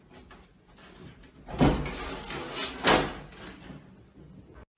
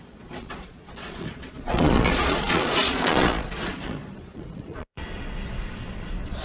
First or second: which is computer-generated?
second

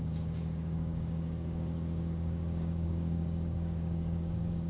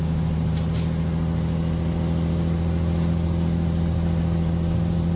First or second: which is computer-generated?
first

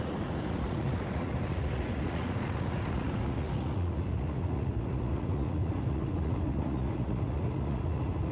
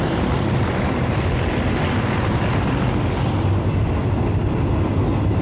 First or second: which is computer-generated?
first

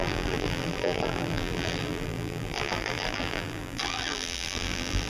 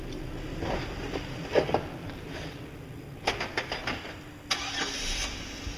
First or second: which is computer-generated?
first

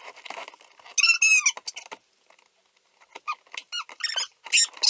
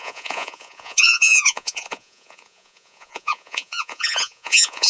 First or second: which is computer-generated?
second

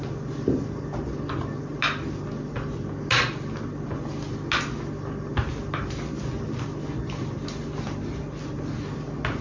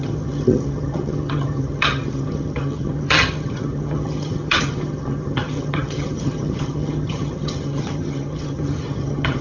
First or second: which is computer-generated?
second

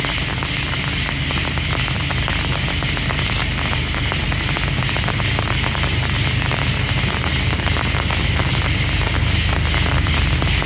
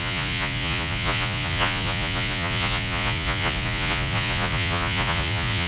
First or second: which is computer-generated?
second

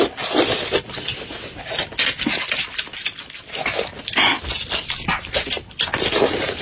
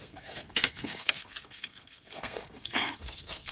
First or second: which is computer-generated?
second